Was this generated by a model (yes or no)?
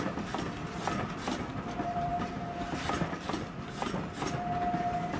no